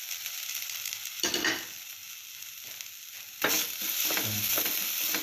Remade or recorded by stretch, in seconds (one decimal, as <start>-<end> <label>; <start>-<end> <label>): 0.0-2.0 remade; 2.0-5.2 recorded